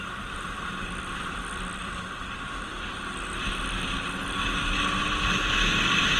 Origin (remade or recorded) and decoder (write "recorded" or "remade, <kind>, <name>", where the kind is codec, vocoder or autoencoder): recorded